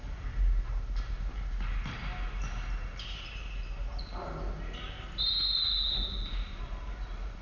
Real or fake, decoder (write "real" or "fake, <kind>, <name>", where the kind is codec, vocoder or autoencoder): real